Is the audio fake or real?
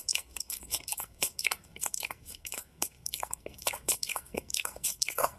fake